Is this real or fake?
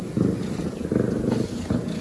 real